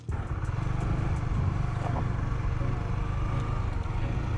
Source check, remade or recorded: recorded